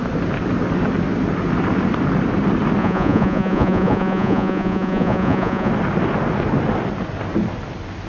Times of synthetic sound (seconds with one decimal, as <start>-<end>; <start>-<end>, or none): 2.8-5.7